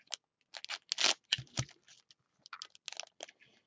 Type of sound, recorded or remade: recorded